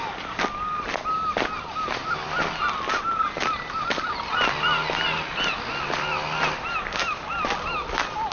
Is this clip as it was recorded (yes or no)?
yes